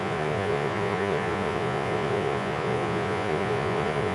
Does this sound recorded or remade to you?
remade